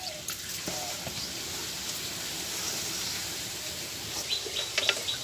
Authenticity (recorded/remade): recorded